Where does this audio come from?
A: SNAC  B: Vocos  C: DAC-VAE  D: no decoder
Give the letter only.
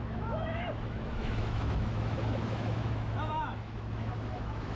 C